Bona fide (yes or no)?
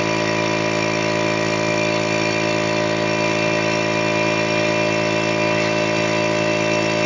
yes